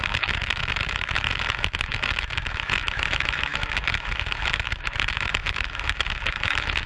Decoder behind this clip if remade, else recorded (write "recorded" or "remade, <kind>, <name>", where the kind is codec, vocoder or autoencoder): remade, autoencoder, DAC-VAE